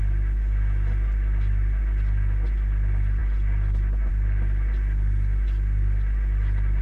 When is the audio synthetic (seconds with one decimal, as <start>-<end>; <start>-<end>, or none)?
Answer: none